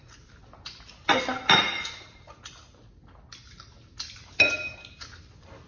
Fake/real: real